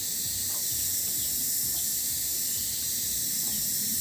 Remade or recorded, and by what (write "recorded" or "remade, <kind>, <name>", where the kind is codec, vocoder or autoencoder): recorded